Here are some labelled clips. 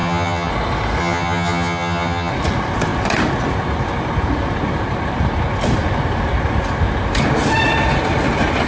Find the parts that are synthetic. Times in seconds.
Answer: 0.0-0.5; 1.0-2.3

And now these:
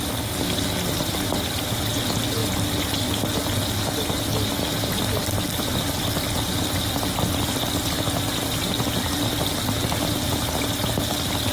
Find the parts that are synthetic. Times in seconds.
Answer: none

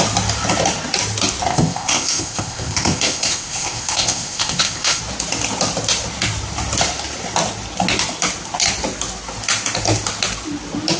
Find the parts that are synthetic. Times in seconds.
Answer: 1.5-5.0

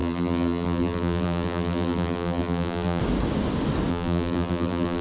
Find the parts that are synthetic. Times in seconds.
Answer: 0.0-3.0; 3.9-5.0

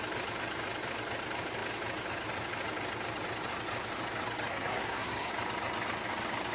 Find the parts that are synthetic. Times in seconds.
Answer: 4.5-5.3